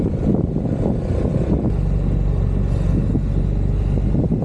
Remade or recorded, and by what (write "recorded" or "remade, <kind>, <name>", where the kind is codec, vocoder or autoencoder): recorded